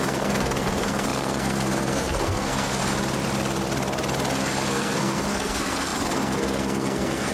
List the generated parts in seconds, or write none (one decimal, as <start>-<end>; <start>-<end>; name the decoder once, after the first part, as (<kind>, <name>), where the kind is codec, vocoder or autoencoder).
0.0-2.8 (codec, SNAC); 4.7-7.3